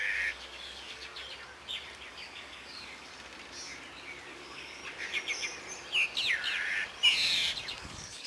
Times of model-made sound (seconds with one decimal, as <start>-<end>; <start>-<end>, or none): 0.0-1.1; 2.1-3.1; 4.3-4.8; 7.8-8.3